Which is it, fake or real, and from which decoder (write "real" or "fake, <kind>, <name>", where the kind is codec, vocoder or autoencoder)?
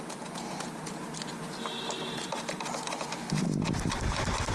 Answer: real